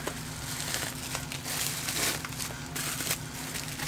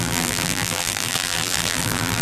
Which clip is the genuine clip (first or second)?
first